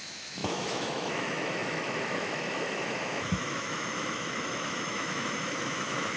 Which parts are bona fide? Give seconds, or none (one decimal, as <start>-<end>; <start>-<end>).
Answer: none